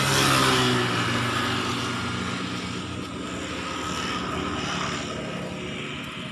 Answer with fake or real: real